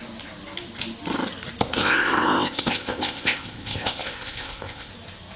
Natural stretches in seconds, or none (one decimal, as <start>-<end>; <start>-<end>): 0.0-1.7; 4.9-5.4